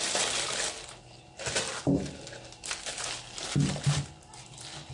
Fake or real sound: real